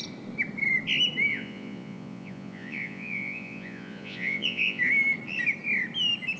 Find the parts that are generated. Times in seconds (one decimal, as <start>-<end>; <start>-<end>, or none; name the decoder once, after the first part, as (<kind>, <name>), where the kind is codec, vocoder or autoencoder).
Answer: 1.3-4.8 (vocoder, Vocos)